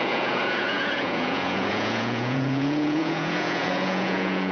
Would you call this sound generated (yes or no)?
yes